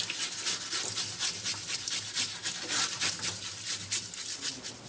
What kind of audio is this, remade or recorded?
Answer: recorded